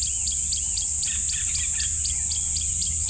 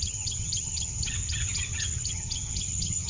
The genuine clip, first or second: first